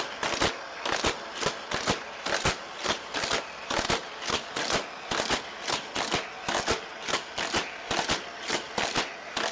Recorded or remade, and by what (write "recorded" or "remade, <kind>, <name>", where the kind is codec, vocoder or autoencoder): recorded